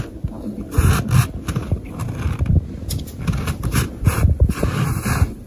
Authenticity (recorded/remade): recorded